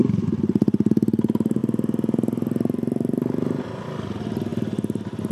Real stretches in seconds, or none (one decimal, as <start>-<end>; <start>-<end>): 0.0-5.3